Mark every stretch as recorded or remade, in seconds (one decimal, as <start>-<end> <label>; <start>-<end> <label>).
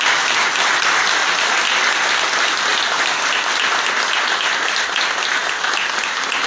0.0-6.5 recorded